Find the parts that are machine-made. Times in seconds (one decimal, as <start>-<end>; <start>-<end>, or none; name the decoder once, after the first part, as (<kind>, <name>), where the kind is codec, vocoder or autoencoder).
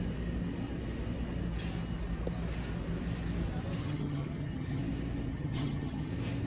3.8-4.8 (vocoder, HiFi-GAN); 5.3-6.1